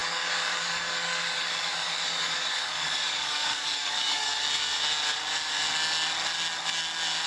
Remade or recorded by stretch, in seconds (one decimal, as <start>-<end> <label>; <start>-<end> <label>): 0.0-4.3 remade; 4.3-7.3 recorded